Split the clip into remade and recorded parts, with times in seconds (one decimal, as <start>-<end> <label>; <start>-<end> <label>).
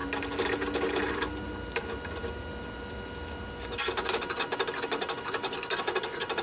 0.0-6.4 recorded